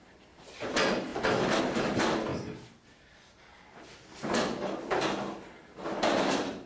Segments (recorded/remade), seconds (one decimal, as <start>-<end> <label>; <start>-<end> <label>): 0.0-6.7 recorded

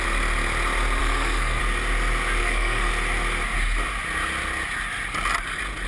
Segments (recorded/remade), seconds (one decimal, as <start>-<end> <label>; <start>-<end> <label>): 0.0-1.0 recorded; 1.0-1.6 remade; 1.6-2.4 recorded; 2.4-2.9 remade; 2.9-5.9 recorded

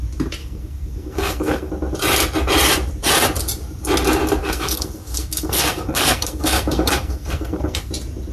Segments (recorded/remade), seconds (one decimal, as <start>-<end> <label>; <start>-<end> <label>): 0.0-0.4 recorded; 0.4-1.7 remade; 1.7-4.4 recorded; 4.4-7.9 remade; 7.9-8.3 recorded